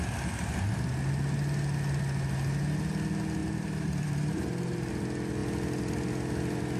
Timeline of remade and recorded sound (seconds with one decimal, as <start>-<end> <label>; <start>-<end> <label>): 0.0-3.4 recorded; 3.4-4.9 remade; 4.9-6.8 recorded

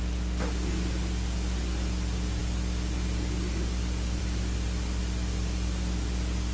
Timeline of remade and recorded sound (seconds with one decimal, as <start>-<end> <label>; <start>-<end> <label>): 0.0-6.5 recorded

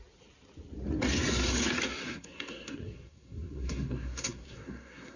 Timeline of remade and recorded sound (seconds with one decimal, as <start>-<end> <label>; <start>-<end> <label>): 0.0-2.0 recorded; 2.0-5.2 remade